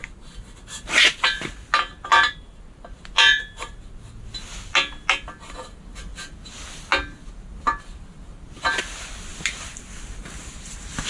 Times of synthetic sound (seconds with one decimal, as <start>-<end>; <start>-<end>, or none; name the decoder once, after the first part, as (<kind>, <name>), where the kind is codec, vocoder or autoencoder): none